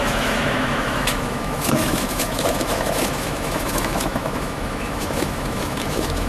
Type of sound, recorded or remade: remade